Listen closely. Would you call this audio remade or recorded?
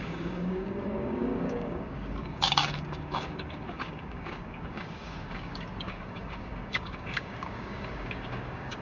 remade